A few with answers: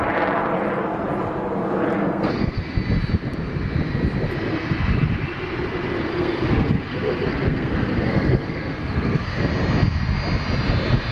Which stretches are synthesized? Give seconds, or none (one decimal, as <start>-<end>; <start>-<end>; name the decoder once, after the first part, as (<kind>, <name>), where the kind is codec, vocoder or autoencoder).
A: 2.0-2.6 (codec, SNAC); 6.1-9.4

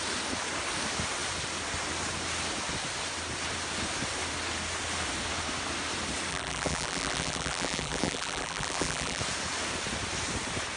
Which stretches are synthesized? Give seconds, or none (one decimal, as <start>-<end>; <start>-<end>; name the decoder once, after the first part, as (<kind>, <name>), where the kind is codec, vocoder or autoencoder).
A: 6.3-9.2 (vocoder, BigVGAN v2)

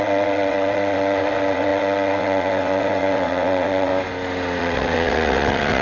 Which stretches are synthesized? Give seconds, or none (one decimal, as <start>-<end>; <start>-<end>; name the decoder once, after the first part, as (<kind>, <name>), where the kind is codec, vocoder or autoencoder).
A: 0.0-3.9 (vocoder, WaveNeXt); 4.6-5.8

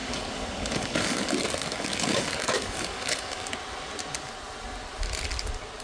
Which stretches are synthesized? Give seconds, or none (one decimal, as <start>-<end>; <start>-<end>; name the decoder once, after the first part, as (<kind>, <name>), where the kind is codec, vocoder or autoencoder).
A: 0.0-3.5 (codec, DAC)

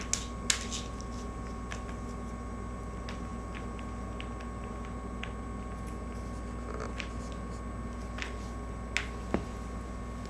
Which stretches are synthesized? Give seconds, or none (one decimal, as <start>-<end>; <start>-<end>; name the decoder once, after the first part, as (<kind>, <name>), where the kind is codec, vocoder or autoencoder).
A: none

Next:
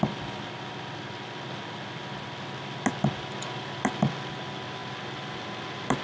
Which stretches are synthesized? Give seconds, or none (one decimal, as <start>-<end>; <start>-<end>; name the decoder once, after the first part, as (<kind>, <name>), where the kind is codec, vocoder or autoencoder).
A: none

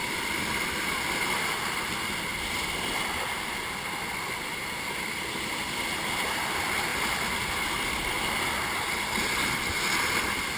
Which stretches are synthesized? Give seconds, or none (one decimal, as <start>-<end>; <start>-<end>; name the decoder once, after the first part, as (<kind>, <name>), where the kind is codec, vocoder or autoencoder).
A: 0.0-0.8 (vocoder, BigVGAN v2)